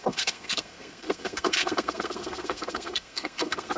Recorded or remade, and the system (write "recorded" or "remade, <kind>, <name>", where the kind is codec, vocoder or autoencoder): remade, codec, SNAC